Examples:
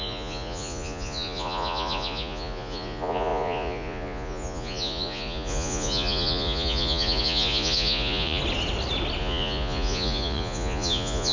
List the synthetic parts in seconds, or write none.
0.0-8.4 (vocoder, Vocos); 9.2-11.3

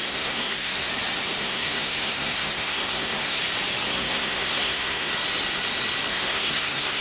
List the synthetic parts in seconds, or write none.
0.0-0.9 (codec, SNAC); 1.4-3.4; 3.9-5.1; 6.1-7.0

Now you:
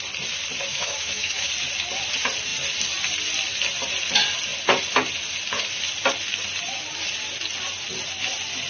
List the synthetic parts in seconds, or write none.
0.7-1.5 (autoencoder, DAC-VAE)